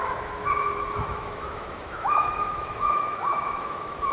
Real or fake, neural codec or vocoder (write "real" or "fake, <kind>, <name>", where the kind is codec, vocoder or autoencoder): fake, autoencoder, DAC-VAE